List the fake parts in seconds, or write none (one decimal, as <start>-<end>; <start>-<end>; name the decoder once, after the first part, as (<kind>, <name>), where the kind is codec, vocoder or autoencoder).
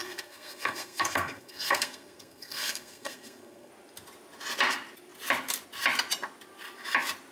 0.0-3.7 (codec, SNAC)